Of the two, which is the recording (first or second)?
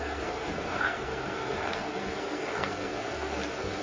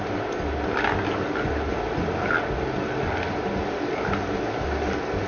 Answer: second